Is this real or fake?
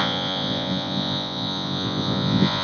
fake